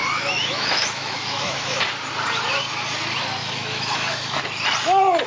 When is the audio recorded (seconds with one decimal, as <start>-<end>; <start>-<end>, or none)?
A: 1.8-3.4; 4.4-5.3